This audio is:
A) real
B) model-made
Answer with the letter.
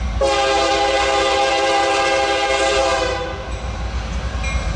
B